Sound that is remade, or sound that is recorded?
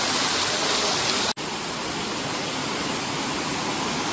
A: recorded